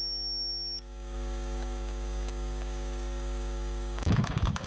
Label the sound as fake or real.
fake